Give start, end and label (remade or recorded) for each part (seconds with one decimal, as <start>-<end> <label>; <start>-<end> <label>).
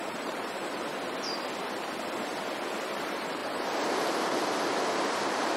0.0-0.9 remade; 0.9-3.0 recorded; 3.0-5.6 remade